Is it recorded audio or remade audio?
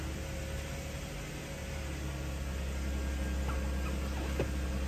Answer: recorded